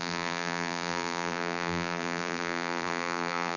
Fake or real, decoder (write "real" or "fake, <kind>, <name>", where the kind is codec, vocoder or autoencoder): fake, vocoder, BigVGAN v2